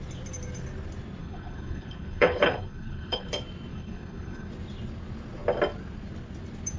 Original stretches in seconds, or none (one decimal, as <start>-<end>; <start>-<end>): 0.0-1.2; 3.3-3.7; 4.5-6.8